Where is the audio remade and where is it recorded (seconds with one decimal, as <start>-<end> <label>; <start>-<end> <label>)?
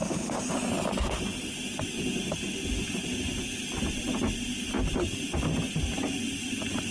0.0-6.9 recorded